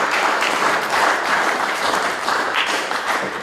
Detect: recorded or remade remade